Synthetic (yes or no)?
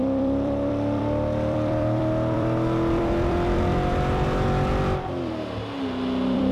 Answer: yes